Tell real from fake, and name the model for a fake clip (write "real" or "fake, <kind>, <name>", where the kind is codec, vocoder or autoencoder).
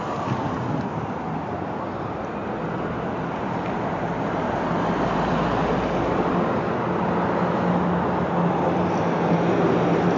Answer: real